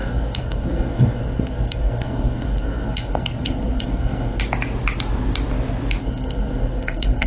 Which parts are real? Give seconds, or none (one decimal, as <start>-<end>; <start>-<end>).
4.4-6.0